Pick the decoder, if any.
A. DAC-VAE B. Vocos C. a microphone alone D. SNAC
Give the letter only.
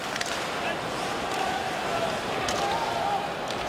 C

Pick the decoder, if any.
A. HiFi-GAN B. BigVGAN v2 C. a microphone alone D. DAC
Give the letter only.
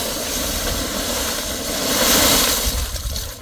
B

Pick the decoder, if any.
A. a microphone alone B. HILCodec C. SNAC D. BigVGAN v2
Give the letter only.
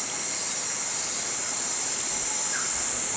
A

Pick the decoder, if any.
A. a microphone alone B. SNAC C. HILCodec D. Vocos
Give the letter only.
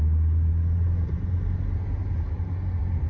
A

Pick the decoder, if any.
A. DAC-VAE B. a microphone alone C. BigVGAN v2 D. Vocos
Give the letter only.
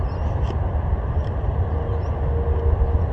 B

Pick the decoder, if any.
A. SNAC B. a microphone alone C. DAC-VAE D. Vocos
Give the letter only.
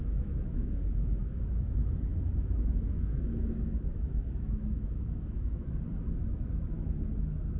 C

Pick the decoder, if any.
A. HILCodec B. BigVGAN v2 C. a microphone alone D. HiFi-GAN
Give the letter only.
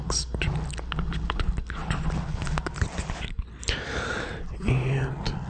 C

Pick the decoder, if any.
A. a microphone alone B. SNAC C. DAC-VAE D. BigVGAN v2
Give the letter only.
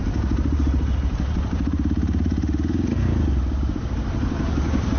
D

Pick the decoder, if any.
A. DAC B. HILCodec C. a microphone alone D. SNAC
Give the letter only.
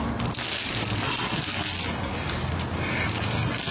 C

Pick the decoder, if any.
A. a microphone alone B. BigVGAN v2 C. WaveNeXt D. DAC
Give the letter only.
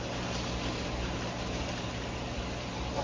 A